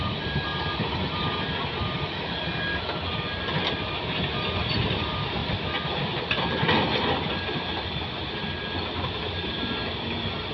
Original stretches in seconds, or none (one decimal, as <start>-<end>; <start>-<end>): 0.0-10.5